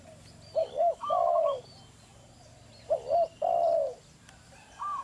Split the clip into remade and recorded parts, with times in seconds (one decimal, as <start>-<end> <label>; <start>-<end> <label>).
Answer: 0.0-0.6 recorded; 0.6-1.7 remade; 1.7-5.0 recorded